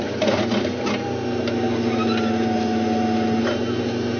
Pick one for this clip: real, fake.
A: real